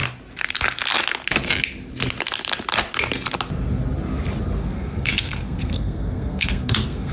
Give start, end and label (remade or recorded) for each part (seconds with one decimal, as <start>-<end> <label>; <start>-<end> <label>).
0.0-4.6 recorded; 4.6-7.1 remade